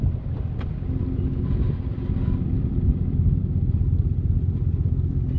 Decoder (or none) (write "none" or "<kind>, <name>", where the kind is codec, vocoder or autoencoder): vocoder, BigVGAN v2